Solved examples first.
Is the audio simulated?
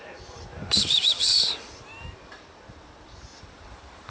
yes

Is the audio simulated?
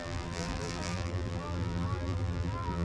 yes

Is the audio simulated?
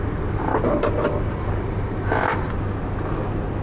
no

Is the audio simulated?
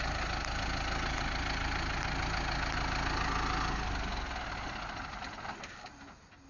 no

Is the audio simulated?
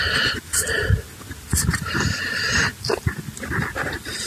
no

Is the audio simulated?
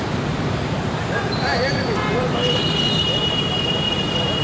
yes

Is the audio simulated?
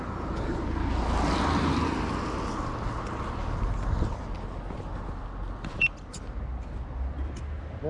no